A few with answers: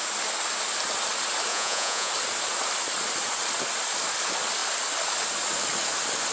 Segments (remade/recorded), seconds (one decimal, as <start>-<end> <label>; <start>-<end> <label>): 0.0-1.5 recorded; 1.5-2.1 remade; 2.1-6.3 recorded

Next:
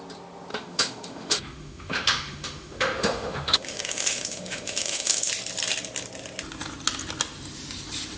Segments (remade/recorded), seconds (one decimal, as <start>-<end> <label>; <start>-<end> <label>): 0.0-0.5 recorded; 0.5-5.3 remade; 5.3-8.2 recorded

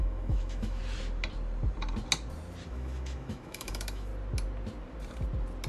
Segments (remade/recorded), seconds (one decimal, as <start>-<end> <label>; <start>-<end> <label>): 0.0-0.8 remade; 0.8-2.7 recorded; 2.7-4.1 remade; 4.1-5.7 recorded

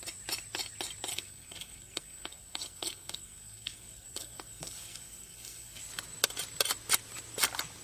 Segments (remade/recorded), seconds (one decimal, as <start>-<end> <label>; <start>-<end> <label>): 0.0-1.1 recorded; 1.1-5.8 remade; 5.8-7.8 recorded